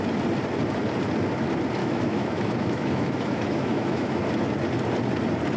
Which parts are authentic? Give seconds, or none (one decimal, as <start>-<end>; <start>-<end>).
0.0-1.8; 4.2-5.6